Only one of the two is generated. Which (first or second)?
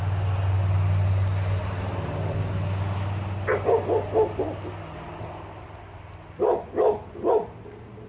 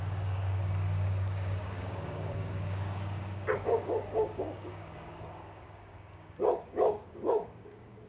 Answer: second